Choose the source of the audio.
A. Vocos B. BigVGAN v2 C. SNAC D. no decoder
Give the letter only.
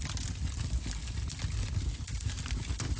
D